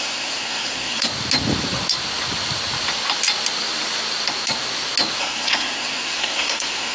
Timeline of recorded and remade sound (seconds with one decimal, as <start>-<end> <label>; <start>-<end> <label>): 0.0-1.1 remade; 1.1-5.2 recorded; 5.2-6.9 remade